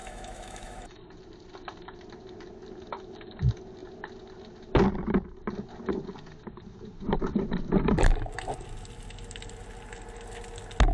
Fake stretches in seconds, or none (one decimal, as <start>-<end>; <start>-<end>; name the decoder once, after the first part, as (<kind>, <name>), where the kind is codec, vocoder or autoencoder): 0.0-1.0 (autoencoder, DAC-VAE)